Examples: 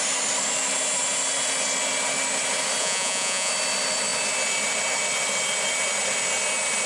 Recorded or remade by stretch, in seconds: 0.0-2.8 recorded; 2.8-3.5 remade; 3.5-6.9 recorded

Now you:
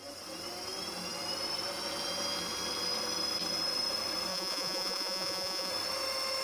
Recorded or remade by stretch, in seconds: 0.0-4.3 recorded; 4.3-5.7 remade; 5.7-6.4 recorded

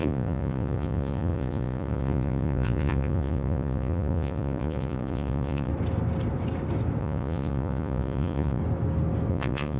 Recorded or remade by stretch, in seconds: 0.0-5.7 remade; 5.7-7.0 recorded; 7.0-8.6 remade; 8.6-9.3 recorded; 9.3-9.8 remade

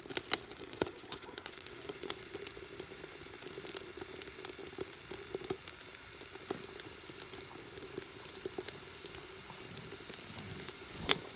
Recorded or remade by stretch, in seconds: 0.0-0.5 recorded; 0.5-2.6 remade; 2.6-10.5 recorded; 10.5-11.4 remade

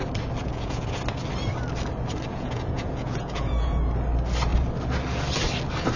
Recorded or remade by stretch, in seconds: 0.0-0.4 recorded; 0.4-1.0 remade; 1.0-2.3 recorded; 2.3-3.8 remade; 3.8-6.0 recorded

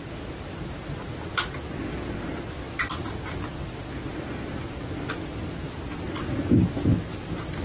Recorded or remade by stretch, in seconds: 0.0-7.6 recorded

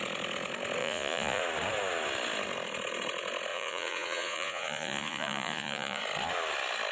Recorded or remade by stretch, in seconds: 0.0-0.8 recorded; 0.8-1.4 remade; 1.4-3.5 recorded; 3.5-6.0 remade; 6.0-6.9 recorded

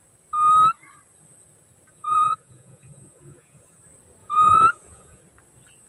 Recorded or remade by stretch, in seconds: 0.0-1.9 recorded; 1.9-3.8 remade; 3.8-4.2 recorded; 4.2-5.2 remade; 5.2-5.9 recorded